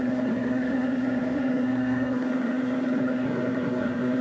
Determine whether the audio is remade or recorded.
remade